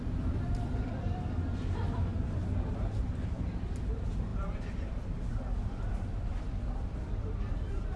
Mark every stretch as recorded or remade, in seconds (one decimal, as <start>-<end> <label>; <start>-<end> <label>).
0.0-8.0 remade